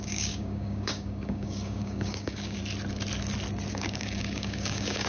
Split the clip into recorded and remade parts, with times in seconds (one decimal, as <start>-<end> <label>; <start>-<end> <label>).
0.0-2.6 remade; 2.6-3.7 recorded; 3.7-5.1 remade